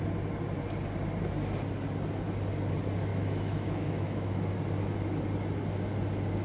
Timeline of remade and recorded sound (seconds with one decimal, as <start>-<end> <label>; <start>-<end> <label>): 0.0-3.1 recorded; 3.1-4.5 remade; 4.5-6.4 recorded

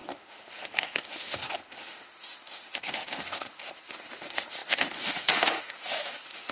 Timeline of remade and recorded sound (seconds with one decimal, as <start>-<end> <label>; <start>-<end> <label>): 0.0-6.5 remade